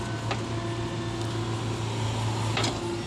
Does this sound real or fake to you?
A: real